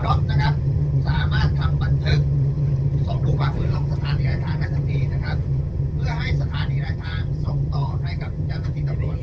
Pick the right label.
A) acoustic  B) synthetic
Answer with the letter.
B